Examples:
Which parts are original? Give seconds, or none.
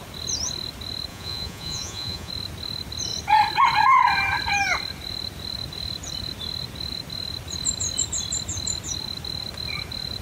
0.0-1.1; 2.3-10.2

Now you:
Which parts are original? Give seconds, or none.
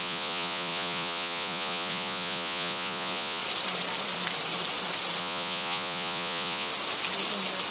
3.4-5.2; 6.7-7.7